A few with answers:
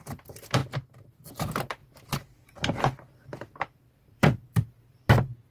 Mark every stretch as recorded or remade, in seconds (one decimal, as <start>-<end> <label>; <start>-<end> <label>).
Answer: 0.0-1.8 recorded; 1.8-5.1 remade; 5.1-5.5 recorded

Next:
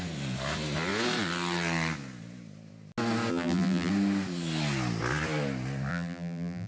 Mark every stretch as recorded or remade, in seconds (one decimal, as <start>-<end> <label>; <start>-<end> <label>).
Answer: 0.0-3.3 recorded; 3.3-3.9 remade; 3.9-5.9 recorded; 5.9-6.7 remade

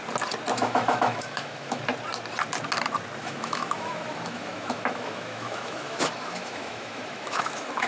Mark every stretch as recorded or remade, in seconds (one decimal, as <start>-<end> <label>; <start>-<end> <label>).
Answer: 0.0-0.5 recorded; 0.5-1.8 remade; 1.8-3.2 recorded; 3.2-7.9 remade